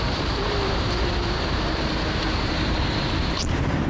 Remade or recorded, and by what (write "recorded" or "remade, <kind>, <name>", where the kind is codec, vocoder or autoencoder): remade, vocoder, BigVGAN v2